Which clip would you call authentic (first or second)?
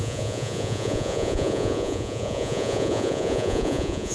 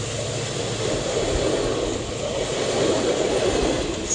second